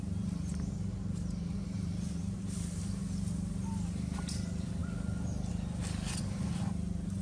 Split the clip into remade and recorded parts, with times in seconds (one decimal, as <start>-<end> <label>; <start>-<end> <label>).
0.0-4.8 remade; 4.8-5.5 recorded; 5.5-7.2 remade